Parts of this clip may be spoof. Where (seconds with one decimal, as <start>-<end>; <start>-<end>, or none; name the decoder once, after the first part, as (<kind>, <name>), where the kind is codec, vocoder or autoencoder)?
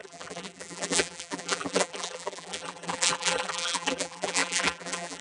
0.0-5.2 (vocoder, BigVGAN v2)